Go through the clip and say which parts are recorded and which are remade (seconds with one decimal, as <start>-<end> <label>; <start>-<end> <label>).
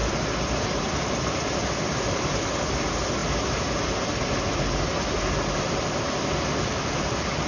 0.0-3.2 remade; 3.2-6.6 recorded; 6.6-7.5 remade